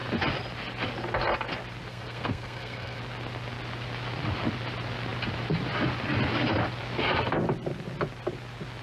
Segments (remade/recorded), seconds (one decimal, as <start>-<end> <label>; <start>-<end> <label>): 0.0-1.9 recorded; 1.9-3.0 remade; 3.0-8.8 recorded